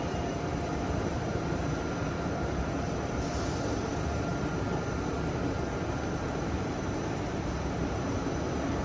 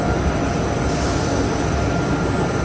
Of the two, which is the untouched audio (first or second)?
second